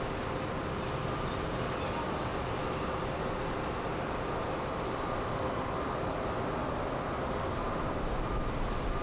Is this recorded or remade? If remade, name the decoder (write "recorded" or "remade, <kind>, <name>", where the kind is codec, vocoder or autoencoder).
recorded